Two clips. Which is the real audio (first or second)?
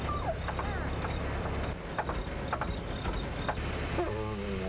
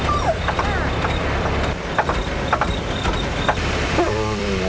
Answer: first